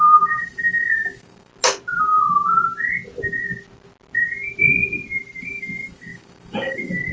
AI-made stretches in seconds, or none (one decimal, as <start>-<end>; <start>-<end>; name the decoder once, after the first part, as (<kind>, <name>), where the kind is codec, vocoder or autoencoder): 0.0-1.5 (codec, DAC); 5.4-7.1

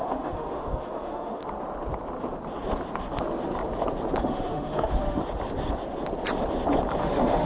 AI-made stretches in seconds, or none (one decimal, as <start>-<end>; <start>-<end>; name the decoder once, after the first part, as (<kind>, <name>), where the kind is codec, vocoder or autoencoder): 0.0-1.4 (autoencoder, DAC-VAE); 4.2-5.2; 7.0-7.5